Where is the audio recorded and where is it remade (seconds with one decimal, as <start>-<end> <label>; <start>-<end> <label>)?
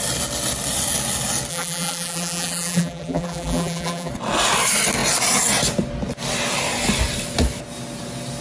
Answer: 0.0-1.5 recorded; 1.5-4.1 remade; 4.1-8.4 recorded